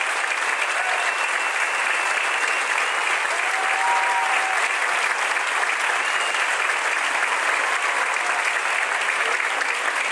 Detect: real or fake real